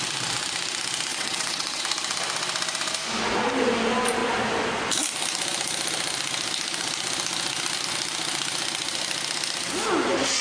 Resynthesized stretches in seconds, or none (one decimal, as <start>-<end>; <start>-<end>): 1.1-1.8